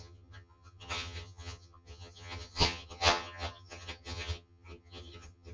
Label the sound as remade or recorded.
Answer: remade